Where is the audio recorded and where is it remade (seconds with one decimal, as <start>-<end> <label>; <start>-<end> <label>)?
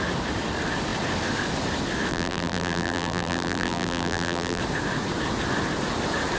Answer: 0.0-2.1 recorded; 2.1-4.6 remade; 4.6-6.4 recorded